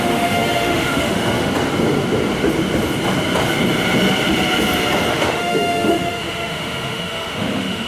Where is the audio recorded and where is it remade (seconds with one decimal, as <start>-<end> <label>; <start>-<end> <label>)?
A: 0.0-1.5 remade; 1.5-5.1 recorded; 5.1-7.9 remade